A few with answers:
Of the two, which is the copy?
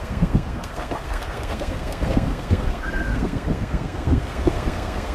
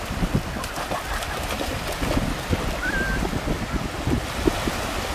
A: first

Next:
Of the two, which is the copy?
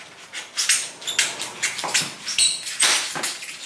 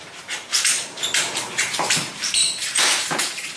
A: second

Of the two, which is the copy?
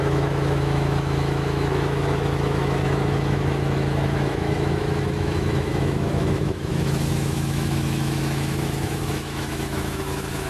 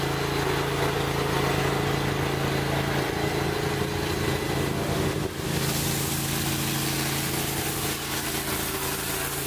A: first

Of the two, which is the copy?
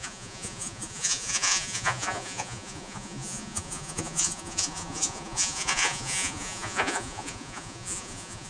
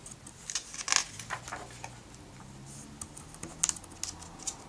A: first